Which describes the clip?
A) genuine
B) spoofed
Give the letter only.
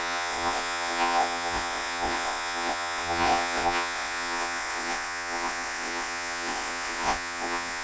B